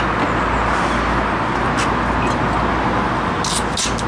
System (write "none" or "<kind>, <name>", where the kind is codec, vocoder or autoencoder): none